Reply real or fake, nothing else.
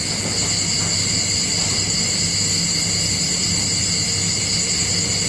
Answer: real